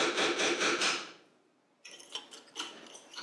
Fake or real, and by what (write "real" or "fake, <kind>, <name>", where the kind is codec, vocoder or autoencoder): real